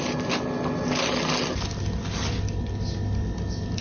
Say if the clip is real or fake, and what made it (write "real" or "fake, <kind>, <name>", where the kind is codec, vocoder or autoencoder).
real